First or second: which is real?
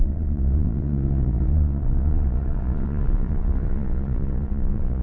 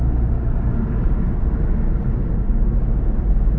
second